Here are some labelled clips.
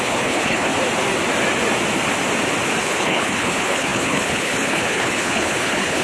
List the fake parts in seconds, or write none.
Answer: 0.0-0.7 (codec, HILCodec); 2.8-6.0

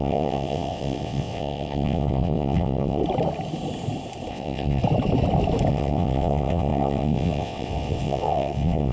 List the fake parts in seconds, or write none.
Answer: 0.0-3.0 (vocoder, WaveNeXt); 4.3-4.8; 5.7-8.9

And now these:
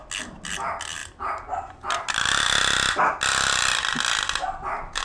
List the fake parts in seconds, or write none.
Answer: none